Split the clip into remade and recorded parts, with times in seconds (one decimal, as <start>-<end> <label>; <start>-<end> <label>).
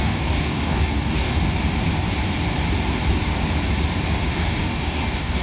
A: 0.0-1.3 remade; 1.3-4.3 recorded; 4.3-5.4 remade